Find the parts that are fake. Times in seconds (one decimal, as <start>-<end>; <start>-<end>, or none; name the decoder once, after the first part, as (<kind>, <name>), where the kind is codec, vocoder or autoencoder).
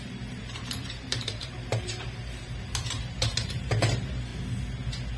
0.0-4.3 (vocoder, BigVGAN v2)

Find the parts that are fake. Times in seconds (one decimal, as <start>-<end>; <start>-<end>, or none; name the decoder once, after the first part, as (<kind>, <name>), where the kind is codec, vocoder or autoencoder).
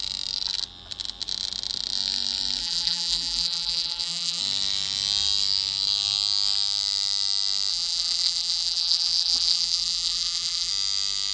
2.6-4.4 (vocoder, BigVGAN v2); 7.7-10.7